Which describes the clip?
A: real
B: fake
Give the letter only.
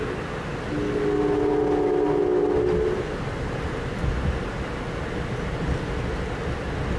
A